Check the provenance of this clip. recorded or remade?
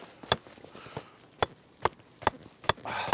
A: recorded